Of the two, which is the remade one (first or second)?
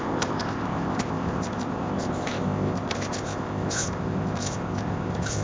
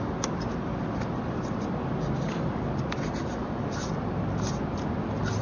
first